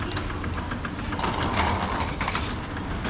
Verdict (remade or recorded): recorded